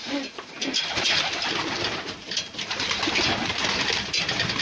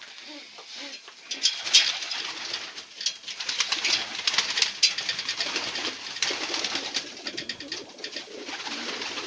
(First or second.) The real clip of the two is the second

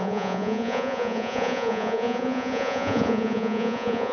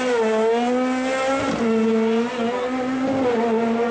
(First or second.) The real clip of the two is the second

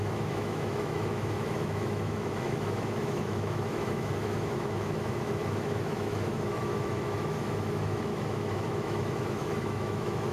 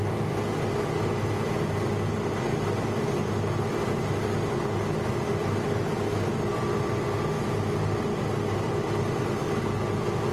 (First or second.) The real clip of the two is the second